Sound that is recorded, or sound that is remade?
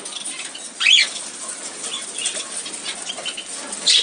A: recorded